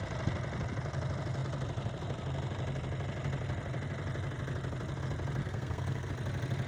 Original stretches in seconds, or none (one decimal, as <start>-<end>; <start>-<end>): 0.0-5.4; 6.1-6.7